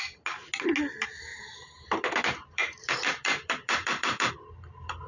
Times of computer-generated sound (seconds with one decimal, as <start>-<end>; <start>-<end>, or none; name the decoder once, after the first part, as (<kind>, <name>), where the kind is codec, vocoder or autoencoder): 1.3-4.3 (vocoder, BigVGAN v2)